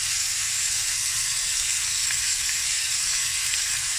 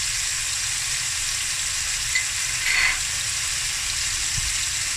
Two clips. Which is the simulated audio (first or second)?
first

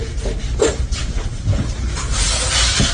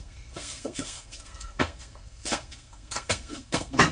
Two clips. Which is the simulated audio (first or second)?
second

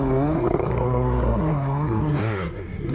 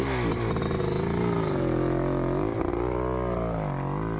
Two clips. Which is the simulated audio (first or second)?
first